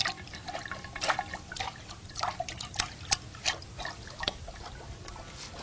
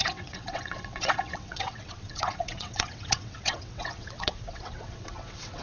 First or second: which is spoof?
second